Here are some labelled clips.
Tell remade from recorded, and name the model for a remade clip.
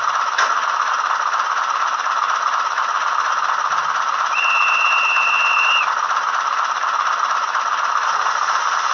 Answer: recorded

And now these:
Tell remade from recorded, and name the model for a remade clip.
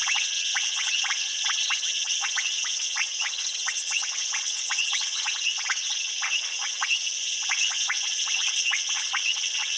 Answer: remade, vocoder, WaveNeXt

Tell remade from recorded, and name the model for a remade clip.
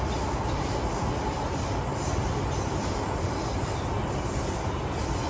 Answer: recorded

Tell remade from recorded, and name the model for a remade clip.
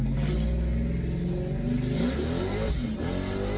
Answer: recorded